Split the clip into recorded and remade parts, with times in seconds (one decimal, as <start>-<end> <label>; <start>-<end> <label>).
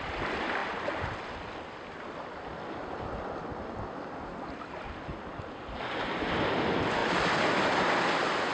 0.0-8.5 recorded